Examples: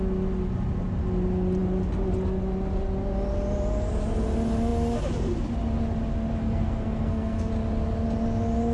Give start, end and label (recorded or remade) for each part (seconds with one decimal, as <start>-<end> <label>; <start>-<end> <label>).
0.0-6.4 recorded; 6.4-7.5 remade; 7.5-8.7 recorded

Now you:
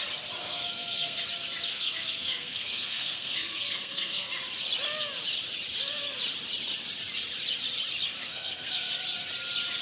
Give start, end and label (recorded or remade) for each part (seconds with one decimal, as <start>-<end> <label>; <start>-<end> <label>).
0.0-0.4 recorded; 0.4-1.2 remade; 1.2-1.7 recorded; 1.7-4.3 remade; 4.3-8.2 recorded; 8.2-8.9 remade; 8.9-9.8 recorded

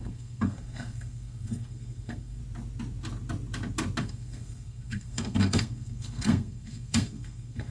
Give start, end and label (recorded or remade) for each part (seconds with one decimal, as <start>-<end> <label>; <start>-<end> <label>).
0.0-2.4 remade; 2.4-4.0 recorded; 4.0-7.7 remade